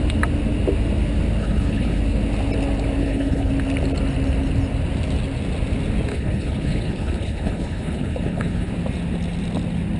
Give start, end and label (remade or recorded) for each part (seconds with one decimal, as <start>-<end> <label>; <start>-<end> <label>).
0.0-1.4 recorded; 1.4-2.0 remade; 2.0-3.0 recorded; 3.0-3.5 remade; 3.5-6.1 recorded; 6.1-8.7 remade; 8.7-10.0 recorded